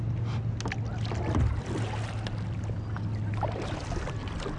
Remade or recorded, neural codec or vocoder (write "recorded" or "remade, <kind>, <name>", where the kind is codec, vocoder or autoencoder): recorded